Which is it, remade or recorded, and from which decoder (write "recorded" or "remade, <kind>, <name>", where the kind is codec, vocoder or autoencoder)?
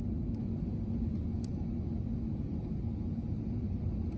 recorded